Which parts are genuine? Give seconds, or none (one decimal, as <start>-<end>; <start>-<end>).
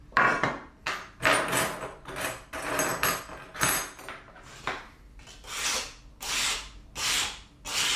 0.0-8.0